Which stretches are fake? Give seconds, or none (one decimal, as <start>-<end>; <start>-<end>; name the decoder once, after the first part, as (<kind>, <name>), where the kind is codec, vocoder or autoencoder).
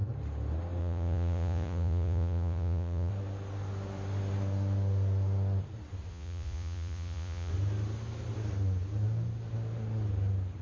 0.8-3.1 (vocoder, Vocos); 6.1-7.5